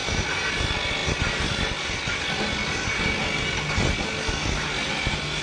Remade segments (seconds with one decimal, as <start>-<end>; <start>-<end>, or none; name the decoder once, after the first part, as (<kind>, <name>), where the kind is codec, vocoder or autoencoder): none